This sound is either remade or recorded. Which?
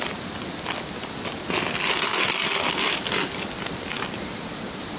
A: recorded